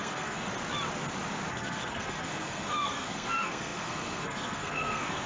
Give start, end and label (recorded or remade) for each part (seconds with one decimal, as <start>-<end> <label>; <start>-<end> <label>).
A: 0.0-0.5 remade; 0.5-1.5 recorded; 1.5-5.3 remade